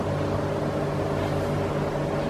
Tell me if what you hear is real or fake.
real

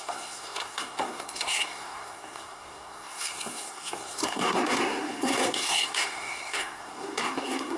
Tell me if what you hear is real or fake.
fake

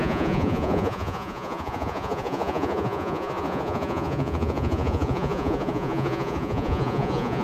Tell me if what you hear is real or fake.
fake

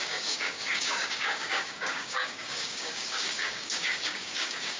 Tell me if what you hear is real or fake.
fake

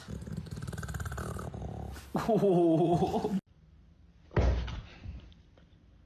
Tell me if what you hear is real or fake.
real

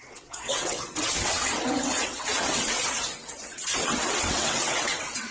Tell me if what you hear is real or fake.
fake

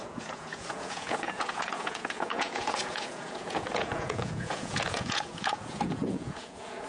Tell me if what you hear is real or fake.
fake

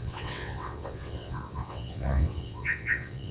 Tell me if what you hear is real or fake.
fake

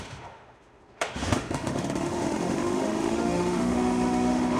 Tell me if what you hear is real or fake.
fake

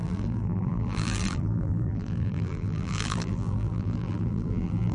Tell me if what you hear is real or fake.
fake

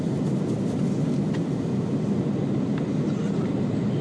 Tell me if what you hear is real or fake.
real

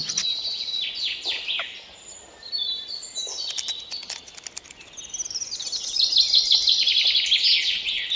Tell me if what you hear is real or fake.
real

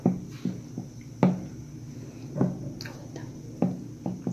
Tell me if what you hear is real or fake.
real